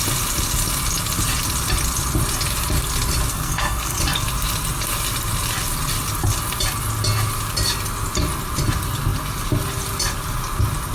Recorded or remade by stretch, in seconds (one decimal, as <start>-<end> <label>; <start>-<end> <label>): 0.0-3.3 recorded; 3.3-4.0 remade; 4.0-10.9 recorded